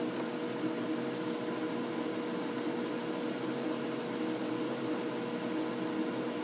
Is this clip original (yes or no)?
yes